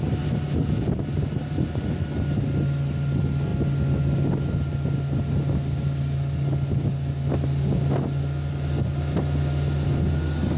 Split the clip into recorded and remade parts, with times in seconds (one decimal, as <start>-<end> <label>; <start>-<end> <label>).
0.0-10.6 recorded